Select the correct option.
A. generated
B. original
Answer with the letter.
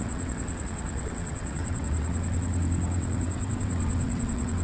A